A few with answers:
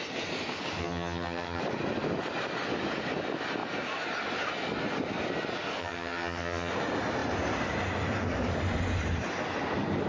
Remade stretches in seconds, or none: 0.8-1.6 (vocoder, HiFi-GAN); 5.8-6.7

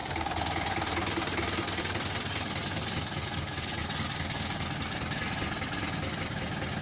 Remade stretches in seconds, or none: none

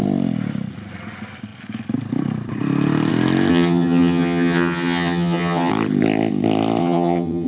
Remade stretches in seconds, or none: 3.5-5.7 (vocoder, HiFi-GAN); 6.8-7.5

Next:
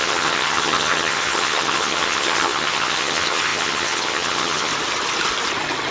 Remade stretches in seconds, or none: 0.0-4.7 (vocoder, HiFi-GAN)

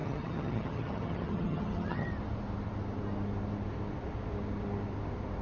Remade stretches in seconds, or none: 0.0-2.1 (vocoder, HiFi-GAN)

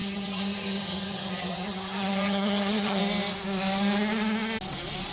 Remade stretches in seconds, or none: 0.0-3.0 (vocoder, HiFi-GAN)